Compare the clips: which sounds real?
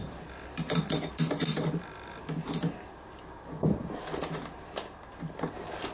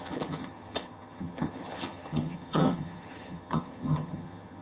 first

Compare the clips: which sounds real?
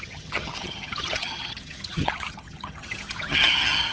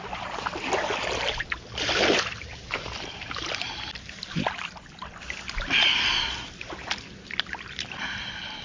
second